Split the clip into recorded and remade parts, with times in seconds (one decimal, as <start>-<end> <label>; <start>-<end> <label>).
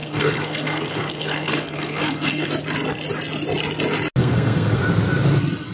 0.0-2.5 remade; 2.5-4.2 recorded; 4.2-4.8 remade; 4.8-5.7 recorded